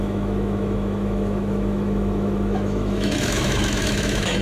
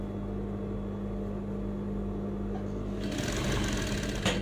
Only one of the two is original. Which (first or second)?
second